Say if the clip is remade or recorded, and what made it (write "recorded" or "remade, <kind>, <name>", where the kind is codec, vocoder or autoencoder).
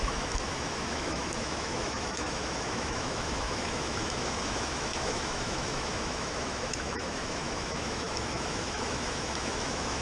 remade, autoencoder, DAC-VAE